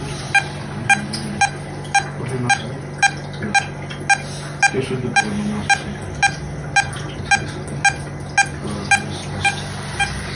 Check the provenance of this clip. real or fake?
real